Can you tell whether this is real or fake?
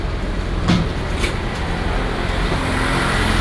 real